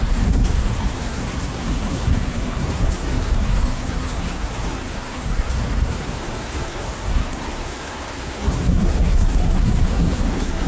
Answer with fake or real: fake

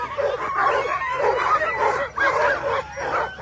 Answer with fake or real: real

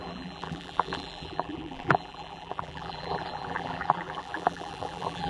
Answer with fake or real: fake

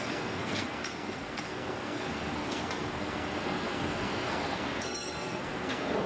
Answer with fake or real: fake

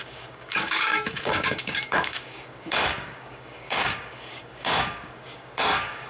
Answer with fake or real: fake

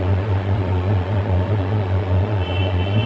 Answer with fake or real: fake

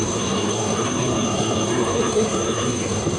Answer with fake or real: fake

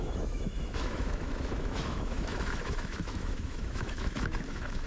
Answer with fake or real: fake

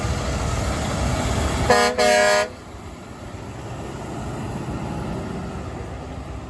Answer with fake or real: real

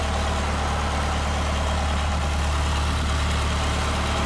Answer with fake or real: real